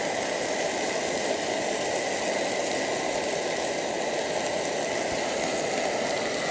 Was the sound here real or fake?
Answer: real